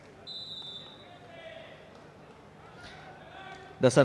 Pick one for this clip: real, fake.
real